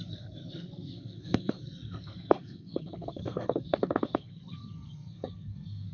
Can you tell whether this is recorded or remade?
remade